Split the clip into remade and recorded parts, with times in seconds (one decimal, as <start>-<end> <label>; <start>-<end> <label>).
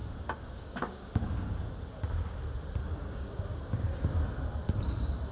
0.0-1.7 remade; 1.7-2.8 recorded; 2.8-4.0 remade; 4.0-5.3 recorded